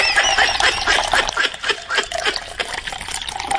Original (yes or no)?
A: no